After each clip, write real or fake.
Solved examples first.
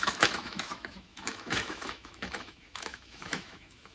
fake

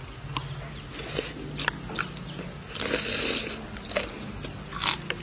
real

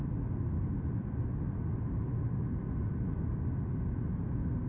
real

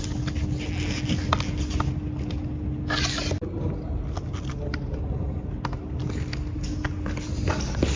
real